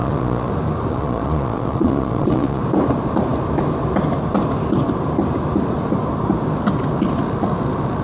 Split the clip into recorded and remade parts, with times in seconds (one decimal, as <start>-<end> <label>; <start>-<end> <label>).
0.0-0.5 remade; 0.5-0.9 recorded; 0.9-2.6 remade; 2.6-8.0 recorded